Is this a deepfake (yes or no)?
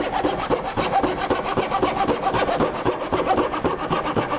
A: no